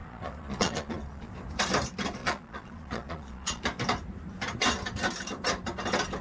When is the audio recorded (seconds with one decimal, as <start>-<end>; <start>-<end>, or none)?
1.3-2.2; 3.6-6.2